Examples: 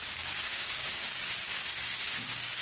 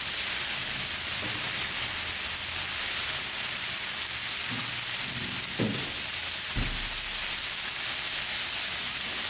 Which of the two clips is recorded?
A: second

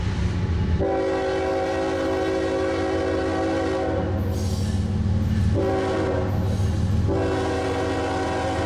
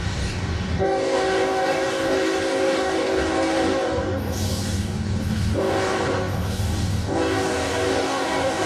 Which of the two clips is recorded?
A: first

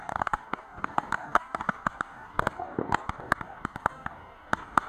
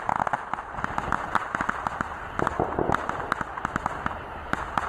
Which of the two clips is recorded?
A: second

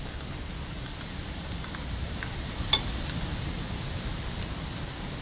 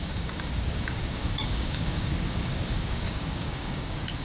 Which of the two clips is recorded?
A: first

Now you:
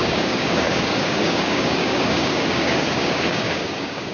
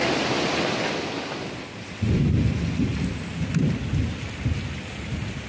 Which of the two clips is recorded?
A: second